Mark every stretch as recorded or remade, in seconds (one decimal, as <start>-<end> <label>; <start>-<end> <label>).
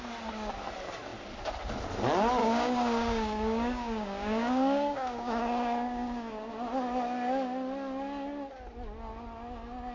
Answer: 0.0-2.4 recorded; 2.4-6.5 remade; 6.5-9.9 recorded